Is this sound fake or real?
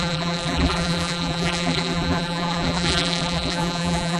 fake